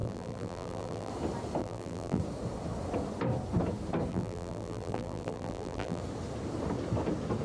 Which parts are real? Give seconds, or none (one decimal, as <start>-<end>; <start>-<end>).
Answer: 1.1-1.6; 2.2-4.1; 6.0-7.4